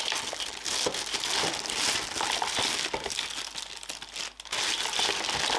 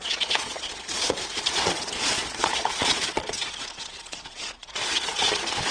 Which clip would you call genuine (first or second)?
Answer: first